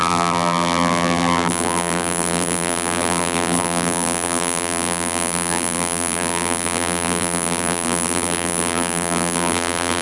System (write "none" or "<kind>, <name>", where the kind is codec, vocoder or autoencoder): vocoder, BigVGAN v2